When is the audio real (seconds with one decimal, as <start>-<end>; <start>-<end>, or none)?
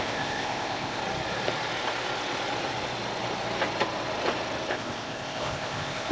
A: 1.0-4.7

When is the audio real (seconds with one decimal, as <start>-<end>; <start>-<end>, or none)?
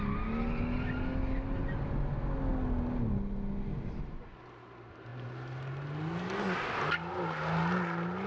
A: 0.0-8.3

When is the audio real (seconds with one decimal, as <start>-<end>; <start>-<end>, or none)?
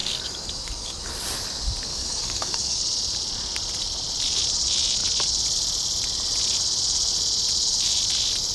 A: 1.1-1.9; 2.8-8.5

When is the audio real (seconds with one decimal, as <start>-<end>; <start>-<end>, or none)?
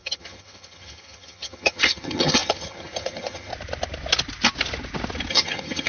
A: 3.5-5.3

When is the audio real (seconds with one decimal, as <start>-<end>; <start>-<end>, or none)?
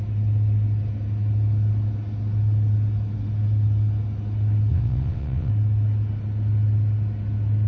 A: 0.0-4.7; 5.5-7.7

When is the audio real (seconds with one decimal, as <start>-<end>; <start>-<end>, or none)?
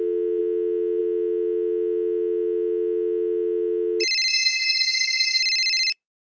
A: 0.0-4.3; 5.4-6.4